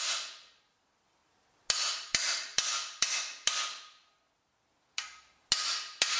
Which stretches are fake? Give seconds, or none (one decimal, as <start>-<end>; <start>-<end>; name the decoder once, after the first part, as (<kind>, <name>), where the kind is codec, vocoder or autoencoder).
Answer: none